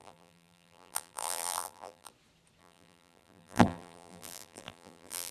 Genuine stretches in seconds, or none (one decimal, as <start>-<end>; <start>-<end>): 2.1-2.6